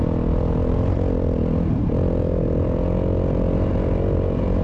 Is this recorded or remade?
recorded